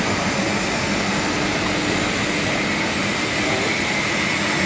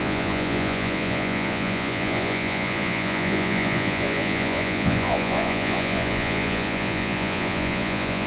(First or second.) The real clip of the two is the first